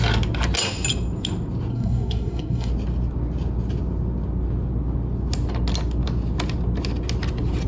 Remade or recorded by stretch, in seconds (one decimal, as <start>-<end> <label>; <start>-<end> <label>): 0.0-1.7 recorded; 1.7-2.7 remade; 2.7-7.7 recorded